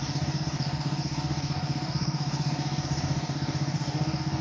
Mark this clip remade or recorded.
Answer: remade